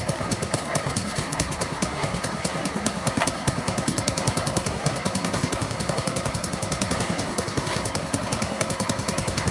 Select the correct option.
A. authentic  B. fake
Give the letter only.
B